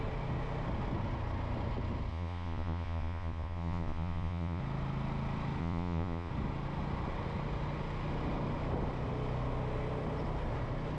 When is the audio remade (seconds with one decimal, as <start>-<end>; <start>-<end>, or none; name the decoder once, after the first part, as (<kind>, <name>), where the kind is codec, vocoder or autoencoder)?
2.1-4.6 (vocoder, Vocos); 5.6-6.3